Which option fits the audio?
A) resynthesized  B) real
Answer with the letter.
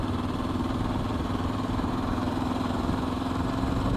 A